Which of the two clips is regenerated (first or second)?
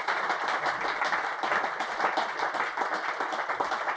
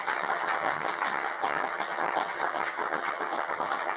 second